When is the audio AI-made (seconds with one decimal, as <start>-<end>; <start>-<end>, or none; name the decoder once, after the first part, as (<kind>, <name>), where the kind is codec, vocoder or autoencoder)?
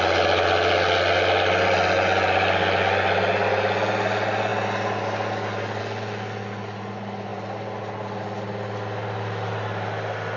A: none